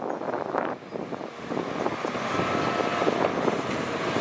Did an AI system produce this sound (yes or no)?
no